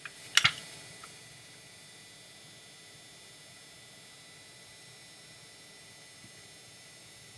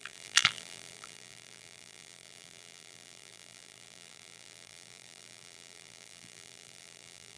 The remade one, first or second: second